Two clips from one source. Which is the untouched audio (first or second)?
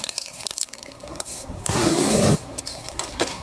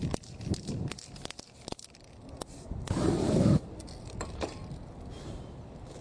second